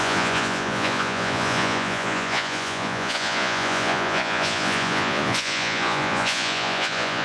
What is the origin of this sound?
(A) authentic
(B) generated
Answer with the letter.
B